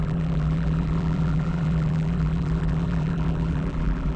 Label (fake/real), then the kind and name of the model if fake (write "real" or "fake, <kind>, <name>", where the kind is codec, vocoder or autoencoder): fake, vocoder, BigVGAN v2